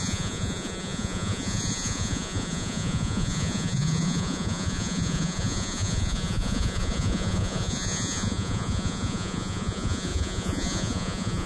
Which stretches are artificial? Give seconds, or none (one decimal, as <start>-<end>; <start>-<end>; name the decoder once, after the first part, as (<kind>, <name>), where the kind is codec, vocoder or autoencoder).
0.0-11.5 (vocoder, Vocos)